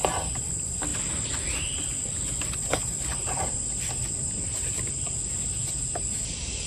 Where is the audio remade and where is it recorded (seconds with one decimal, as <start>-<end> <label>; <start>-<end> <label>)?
0.0-6.7 recorded